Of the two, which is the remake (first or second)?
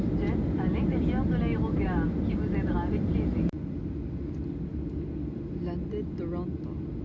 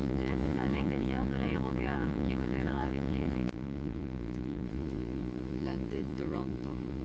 second